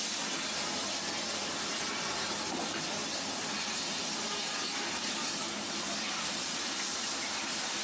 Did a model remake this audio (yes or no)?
no